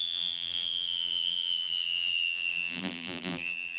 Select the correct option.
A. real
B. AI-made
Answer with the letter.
B